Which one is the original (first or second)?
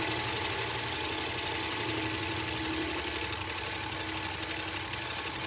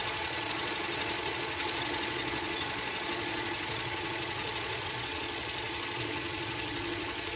first